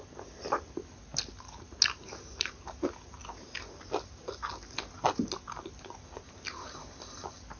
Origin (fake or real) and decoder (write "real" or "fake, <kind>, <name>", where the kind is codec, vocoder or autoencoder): real